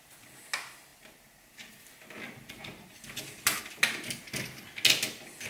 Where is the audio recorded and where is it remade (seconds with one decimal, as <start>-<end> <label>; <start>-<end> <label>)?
0.0-5.5 recorded